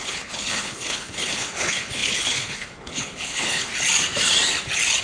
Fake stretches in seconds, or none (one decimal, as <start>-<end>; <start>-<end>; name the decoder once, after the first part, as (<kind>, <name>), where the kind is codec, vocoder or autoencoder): 0.0-3.7 (codec, HILCodec)